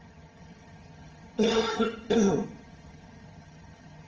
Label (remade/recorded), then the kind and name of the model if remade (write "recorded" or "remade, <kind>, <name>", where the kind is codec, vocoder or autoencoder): remade, vocoder, HiFi-GAN